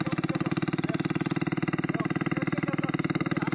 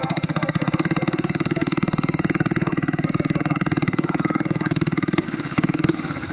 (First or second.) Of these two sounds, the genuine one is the first